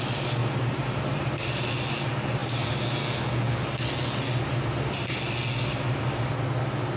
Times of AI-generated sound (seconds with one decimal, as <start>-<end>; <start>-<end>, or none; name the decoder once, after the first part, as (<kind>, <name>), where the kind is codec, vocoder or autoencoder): 0.4-1.7 (vocoder, BigVGAN v2)

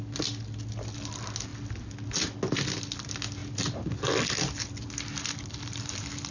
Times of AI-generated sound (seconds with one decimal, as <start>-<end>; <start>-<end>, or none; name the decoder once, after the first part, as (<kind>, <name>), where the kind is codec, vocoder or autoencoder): none

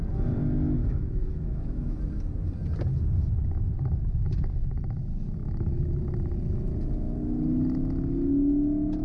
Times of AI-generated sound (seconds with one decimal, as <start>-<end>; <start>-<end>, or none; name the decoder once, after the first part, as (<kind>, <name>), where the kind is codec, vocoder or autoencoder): 0.8-2.0 (autoencoder, DAC-VAE); 5.4-5.9

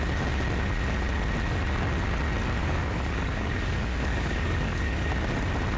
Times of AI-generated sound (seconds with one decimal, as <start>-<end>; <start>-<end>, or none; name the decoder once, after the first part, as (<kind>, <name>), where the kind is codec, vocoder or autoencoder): 2.6-5.1 (codec, DAC)